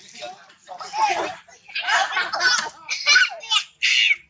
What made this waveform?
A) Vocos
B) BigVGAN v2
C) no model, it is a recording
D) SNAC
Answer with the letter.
C